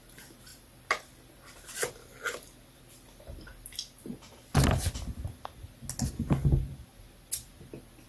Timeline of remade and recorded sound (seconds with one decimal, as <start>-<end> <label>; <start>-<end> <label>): 0.0-0.5 recorded; 0.5-2.8 remade; 2.8-3.5 recorded; 3.5-4.3 remade; 4.3-8.1 recorded

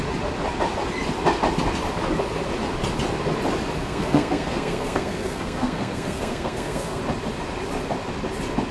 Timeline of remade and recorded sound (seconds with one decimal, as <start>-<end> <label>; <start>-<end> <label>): 0.0-3.8 recorded; 3.8-7.0 remade; 7.0-8.7 recorded

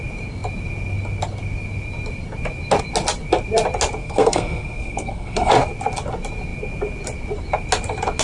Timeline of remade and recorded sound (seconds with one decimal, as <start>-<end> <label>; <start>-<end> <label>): 0.0-4.0 recorded; 4.0-5.5 remade; 5.5-8.2 recorded

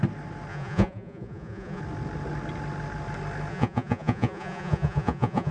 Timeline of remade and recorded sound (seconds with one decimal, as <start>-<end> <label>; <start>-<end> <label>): 0.0-0.5 recorded; 0.5-1.8 remade; 1.8-3.5 recorded; 3.5-5.5 remade

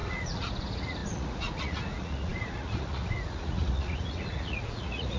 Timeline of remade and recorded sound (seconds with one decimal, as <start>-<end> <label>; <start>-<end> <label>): 0.0-5.2 remade

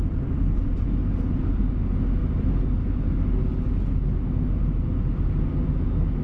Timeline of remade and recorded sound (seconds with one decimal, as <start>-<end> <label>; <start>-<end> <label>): 0.0-6.2 recorded

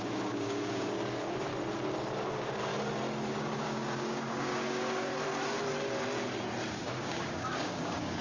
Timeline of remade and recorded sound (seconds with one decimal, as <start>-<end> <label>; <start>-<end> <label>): 0.0-1.5 remade; 1.5-2.3 recorded; 2.3-2.7 remade; 2.7-3.3 recorded; 3.3-5.1 remade; 5.1-6.7 recorded; 6.7-8.2 remade